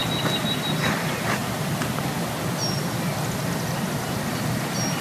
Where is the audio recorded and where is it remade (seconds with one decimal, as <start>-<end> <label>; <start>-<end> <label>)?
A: 0.0-0.8 remade; 0.8-5.0 recorded